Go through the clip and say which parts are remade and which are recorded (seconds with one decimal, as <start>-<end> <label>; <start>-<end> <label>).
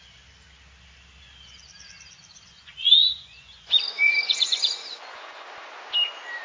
0.0-2.3 recorded; 2.3-5.5 remade; 5.5-6.4 recorded